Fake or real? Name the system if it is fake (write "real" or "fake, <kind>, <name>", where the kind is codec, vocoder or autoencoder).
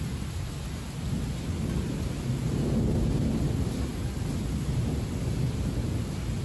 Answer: real